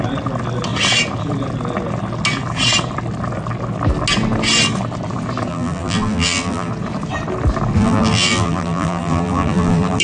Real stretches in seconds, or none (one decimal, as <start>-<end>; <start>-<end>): 0.0-5.5; 6.7-7.8

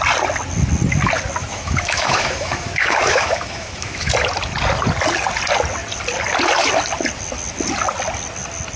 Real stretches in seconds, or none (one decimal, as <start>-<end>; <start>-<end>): 0.0-1.4; 4.1-8.8

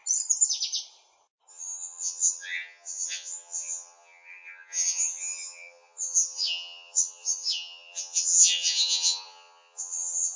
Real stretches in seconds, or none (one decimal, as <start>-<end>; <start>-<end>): 0.0-1.5

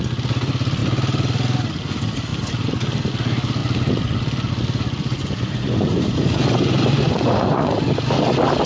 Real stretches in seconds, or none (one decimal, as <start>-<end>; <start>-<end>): 0.0-5.0; 7.8-8.7

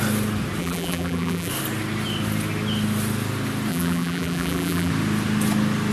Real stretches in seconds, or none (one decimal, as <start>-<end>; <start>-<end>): 0.0-0.6; 1.5-3.7; 4.9-5.9

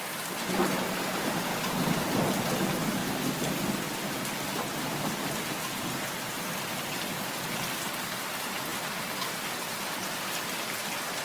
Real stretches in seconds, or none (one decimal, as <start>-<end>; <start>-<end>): none

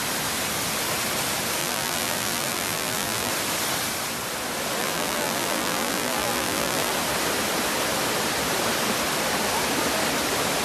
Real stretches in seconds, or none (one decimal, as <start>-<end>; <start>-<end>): 0.0-1.6; 3.3-4.8; 6.9-10.6